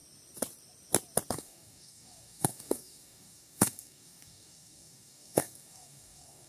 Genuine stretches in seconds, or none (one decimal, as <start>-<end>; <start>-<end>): 0.0-1.3